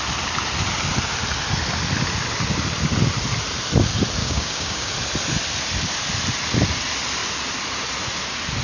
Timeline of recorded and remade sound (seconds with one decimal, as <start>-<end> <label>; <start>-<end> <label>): 0.0-4.2 recorded; 4.2-4.9 remade; 4.9-8.6 recorded